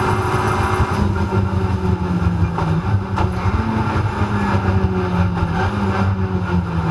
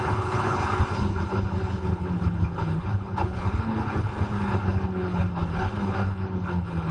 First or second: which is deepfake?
second